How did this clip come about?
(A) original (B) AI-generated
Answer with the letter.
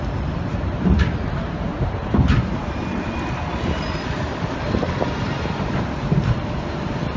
B